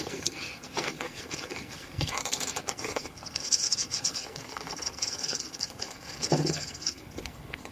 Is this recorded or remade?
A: remade